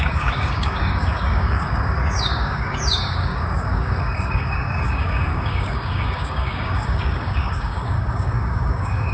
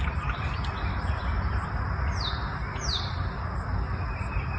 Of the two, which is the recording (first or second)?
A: second